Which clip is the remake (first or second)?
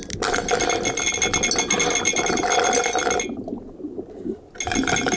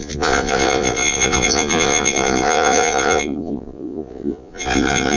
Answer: second